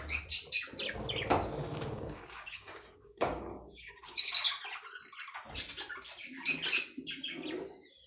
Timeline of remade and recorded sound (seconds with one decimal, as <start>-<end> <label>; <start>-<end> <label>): 0.0-1.6 recorded; 1.6-4.3 remade; 4.3-8.1 recorded